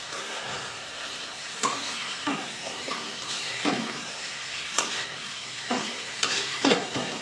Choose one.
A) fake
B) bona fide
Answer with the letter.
A